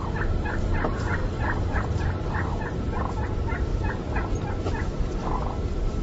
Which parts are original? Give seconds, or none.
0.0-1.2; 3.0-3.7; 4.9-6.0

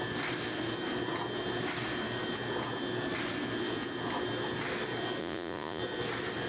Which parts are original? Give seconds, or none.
0.0-5.2; 5.8-6.5

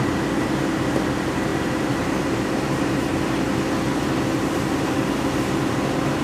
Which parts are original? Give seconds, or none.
0.0-1.5; 2.5-6.2

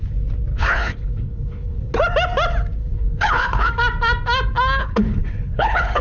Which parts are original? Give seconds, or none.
0.0-0.5; 1.9-2.8; 3.7-4.8

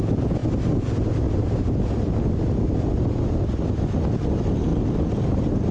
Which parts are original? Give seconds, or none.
0.0-5.7

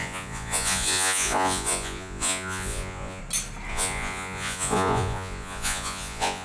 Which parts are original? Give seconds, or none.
3.2-3.7